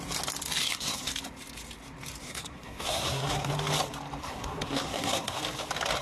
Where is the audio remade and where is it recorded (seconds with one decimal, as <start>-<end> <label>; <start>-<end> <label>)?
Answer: 0.0-0.6 recorded; 0.6-1.1 remade; 1.1-2.2 recorded; 2.2-3.5 remade; 3.5-4.2 recorded; 4.2-5.4 remade; 5.4-6.0 recorded